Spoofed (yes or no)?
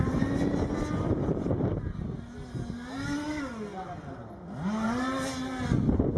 no